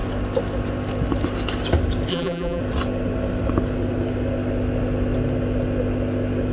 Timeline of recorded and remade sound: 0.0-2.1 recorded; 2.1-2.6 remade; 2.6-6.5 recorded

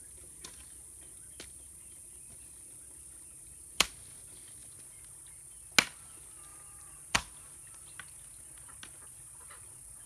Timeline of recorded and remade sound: 0.0-6.5 recorded; 6.5-7.1 remade; 7.1-10.1 recorded

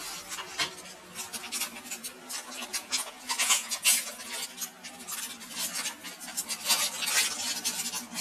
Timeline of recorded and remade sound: 0.0-2.7 recorded; 2.7-4.1 remade; 4.1-8.2 recorded

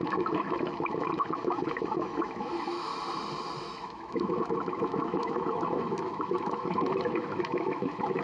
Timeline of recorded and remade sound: 0.0-2.9 remade; 2.9-3.6 recorded; 3.6-8.2 remade